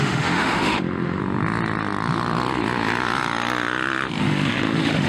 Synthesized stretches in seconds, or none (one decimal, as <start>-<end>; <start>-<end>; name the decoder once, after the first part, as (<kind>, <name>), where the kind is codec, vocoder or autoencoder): 0.0-1.2 (autoencoder, DAC-VAE); 4.2-5.1